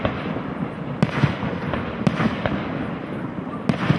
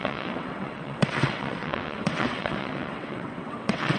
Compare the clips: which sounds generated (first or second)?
second